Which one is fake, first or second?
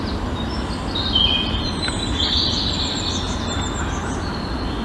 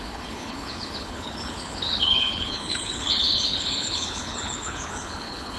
second